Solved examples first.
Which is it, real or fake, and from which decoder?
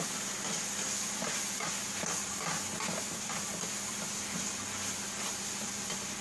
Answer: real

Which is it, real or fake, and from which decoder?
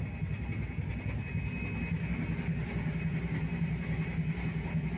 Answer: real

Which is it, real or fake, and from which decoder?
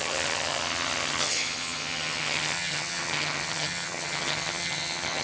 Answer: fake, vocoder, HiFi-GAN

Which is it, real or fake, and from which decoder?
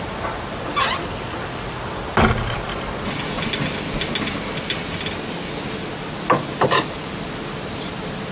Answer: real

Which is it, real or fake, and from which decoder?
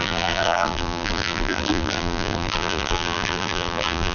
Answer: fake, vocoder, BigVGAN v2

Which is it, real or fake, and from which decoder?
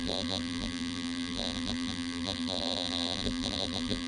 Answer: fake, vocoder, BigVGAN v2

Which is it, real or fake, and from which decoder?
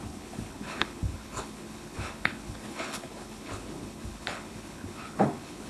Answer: fake, codec, HILCodec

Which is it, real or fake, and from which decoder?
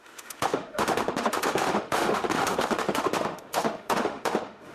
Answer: fake, autoencoder, DAC-VAE